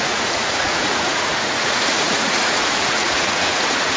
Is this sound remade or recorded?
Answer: remade